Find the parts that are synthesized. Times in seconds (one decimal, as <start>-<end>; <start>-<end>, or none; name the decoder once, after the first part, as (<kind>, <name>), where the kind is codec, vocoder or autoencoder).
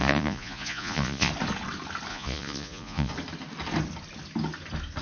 0.0-1.3 (vocoder, Vocos); 2.1-3.1